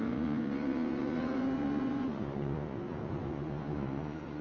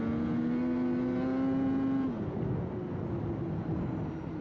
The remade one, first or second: first